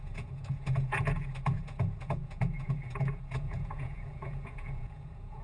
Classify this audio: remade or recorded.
remade